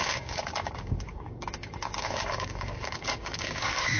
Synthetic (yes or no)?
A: yes